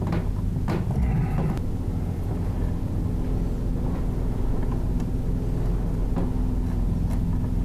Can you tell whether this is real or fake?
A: real